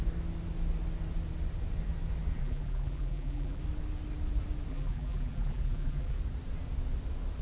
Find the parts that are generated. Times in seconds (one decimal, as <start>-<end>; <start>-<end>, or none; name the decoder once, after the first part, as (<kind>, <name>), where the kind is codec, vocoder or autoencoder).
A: 2.4-3.6 (vocoder, BigVGAN v2); 4.7-6.2